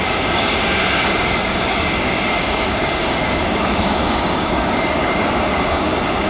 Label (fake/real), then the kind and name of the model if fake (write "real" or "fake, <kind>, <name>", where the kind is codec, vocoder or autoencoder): fake, codec, DAC